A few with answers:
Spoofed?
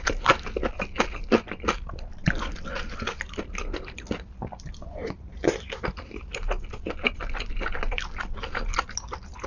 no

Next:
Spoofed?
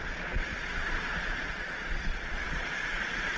yes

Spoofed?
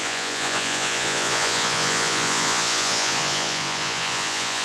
yes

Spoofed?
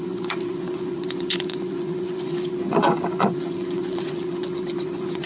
yes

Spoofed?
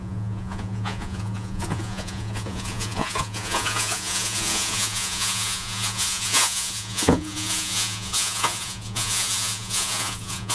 yes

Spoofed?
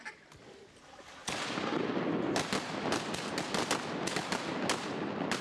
no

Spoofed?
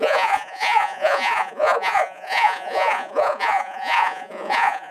yes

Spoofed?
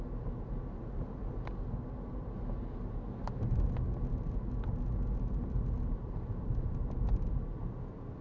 no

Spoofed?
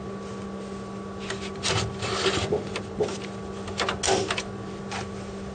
no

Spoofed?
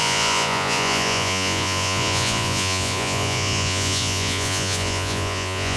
yes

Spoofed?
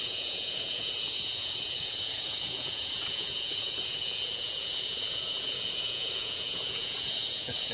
yes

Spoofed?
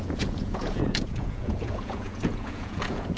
yes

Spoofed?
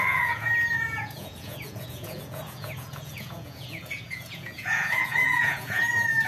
yes